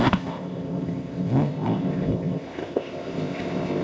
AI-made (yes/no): yes